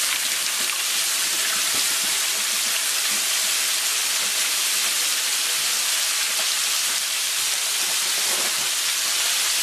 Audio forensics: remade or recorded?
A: recorded